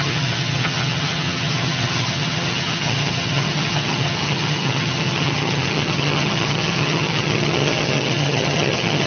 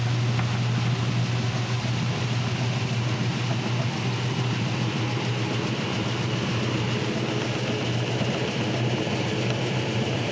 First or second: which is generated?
first